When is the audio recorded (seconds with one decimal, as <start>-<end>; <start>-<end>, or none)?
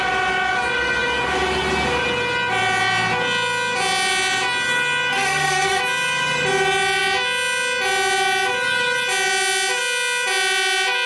0.0-5.1; 5.8-11.1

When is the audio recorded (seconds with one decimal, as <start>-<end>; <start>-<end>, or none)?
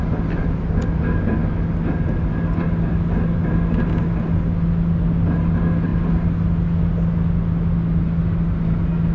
0.0-9.1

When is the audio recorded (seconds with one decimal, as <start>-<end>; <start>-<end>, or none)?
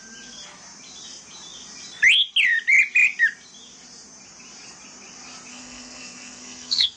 0.0-5.5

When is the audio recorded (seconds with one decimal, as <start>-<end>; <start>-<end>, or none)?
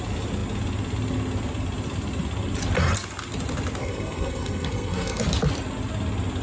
0.0-3.8; 5.2-6.4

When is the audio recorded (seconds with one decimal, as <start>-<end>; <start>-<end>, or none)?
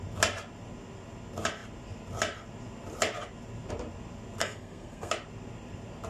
0.0-4.4; 5.1-6.1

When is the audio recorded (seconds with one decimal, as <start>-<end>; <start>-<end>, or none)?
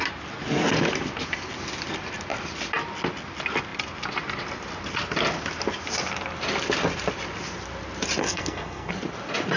0.0-8.2; 8.9-9.6